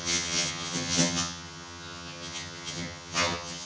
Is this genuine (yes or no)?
no